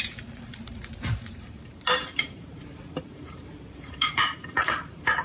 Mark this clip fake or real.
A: fake